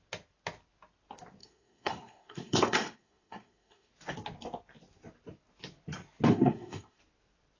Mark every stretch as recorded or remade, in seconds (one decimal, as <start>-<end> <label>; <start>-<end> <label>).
0.0-1.4 recorded; 1.4-3.9 remade; 3.9-6.3 recorded; 6.3-7.0 remade; 7.0-7.6 recorded